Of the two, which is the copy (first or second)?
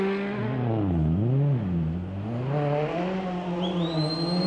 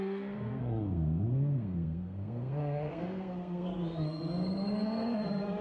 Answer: second